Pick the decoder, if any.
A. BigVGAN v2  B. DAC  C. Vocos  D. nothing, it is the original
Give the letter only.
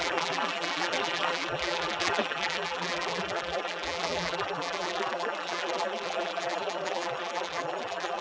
A